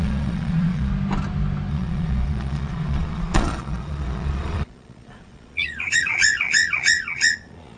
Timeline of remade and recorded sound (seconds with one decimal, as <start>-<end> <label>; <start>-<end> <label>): 0.0-0.9 remade; 0.9-1.7 recorded; 1.7-7.8 remade